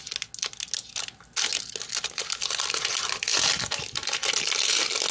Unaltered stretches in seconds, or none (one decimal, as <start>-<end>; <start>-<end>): 0.0-5.1